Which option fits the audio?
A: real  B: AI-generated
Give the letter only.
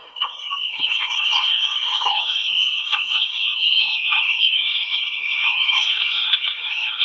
B